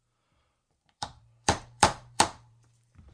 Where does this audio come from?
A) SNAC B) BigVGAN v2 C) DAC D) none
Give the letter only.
B